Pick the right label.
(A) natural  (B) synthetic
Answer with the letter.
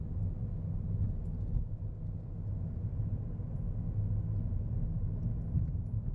A